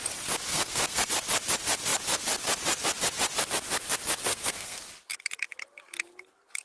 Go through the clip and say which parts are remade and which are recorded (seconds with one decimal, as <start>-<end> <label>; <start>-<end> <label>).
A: 0.0-0.5 recorded; 0.5-1.1 remade; 1.1-4.3 recorded; 4.3-4.9 remade; 4.9-6.6 recorded